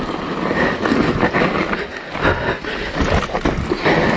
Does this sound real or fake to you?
real